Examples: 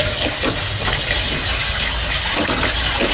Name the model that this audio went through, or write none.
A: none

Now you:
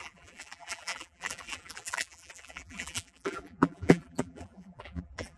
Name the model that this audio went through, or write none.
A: vocoder, BigVGAN v2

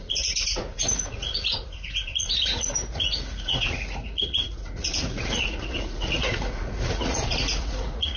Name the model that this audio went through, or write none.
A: vocoder, Vocos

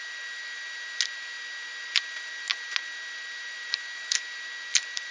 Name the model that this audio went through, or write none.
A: none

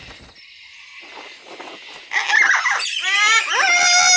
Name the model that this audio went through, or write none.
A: none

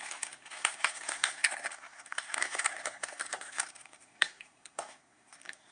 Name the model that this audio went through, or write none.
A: codec, SNAC